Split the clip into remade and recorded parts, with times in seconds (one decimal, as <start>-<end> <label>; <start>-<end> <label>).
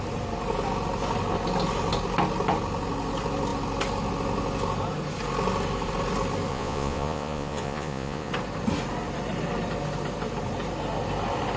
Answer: 0.0-6.5 recorded; 6.5-8.3 remade; 8.3-11.6 recorded